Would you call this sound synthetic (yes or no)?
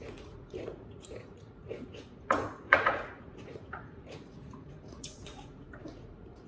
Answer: yes